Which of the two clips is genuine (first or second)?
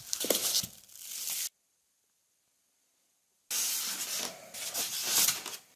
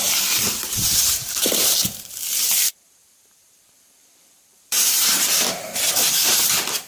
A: first